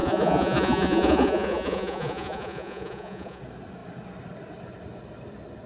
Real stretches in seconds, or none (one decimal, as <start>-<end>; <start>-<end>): 3.4-5.7